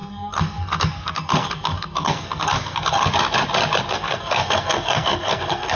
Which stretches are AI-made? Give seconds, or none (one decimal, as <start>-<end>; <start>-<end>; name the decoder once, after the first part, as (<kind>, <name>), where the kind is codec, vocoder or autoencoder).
0.0-3.0 (codec, SNAC); 3.9-5.8